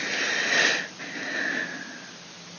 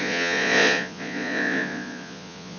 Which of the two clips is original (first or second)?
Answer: first